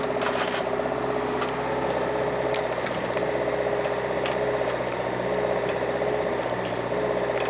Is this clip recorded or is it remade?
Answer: recorded